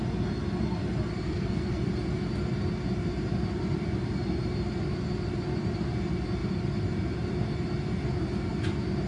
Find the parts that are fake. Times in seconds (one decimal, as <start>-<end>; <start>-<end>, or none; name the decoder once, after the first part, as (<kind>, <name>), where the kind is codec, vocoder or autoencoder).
1.2-1.8 (codec, SNAC)